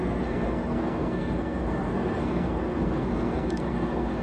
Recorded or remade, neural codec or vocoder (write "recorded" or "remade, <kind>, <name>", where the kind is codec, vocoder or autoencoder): remade, codec, SNAC